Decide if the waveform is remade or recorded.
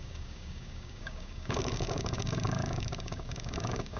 remade